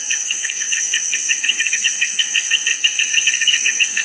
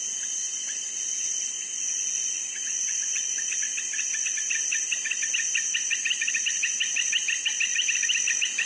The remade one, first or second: first